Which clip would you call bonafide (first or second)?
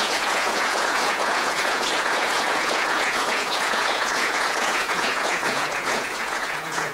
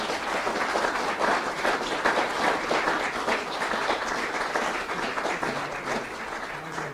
second